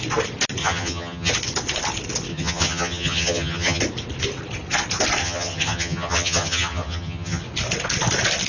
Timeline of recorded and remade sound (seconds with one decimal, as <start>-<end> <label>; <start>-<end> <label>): 0.0-0.6 recorded; 0.6-1.3 remade; 1.3-2.3 recorded; 2.3-3.8 remade; 3.8-5.2 recorded; 5.2-7.4 remade; 7.4-8.5 recorded